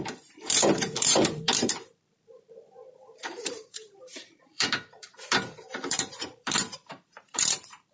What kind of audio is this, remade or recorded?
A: remade